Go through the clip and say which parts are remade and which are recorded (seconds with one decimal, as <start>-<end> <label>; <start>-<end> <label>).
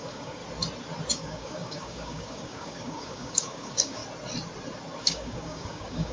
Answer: 0.0-0.4 remade; 0.4-1.1 recorded; 1.1-4.0 remade; 4.0-5.0 recorded; 5.0-6.1 remade